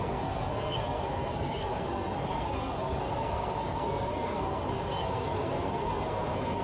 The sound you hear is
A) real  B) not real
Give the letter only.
B